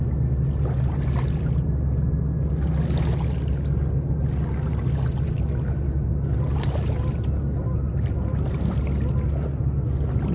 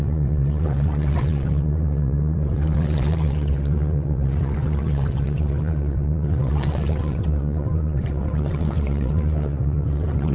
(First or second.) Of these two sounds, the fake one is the second